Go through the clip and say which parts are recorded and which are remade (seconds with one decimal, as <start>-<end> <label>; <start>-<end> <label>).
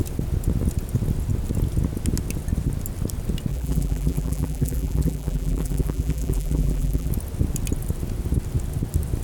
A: 0.0-3.5 recorded; 3.5-7.1 remade; 7.1-9.2 recorded